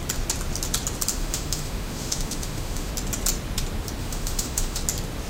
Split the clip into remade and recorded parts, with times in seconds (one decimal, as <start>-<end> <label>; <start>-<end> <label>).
0.0-1.1 recorded; 1.1-2.9 remade; 2.9-4.0 recorded; 4.0-4.8 remade; 4.8-5.3 recorded